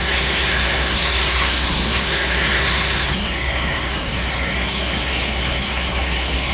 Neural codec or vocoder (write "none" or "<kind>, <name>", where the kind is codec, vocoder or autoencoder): codec, SNAC